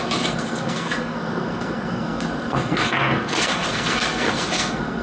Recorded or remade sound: remade